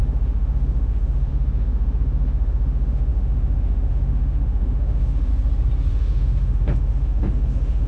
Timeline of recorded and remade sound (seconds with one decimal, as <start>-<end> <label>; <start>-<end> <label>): 0.0-5.3 remade; 5.3-5.9 recorded; 5.9-7.9 remade